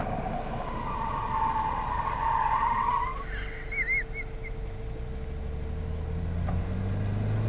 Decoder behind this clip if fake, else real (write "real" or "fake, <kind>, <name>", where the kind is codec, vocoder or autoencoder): real